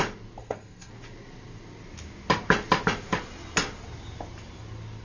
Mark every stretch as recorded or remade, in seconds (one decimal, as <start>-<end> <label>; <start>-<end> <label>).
0.0-0.4 recorded; 0.4-0.9 remade; 0.9-5.0 recorded